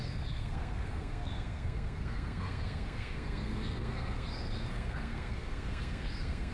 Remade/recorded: remade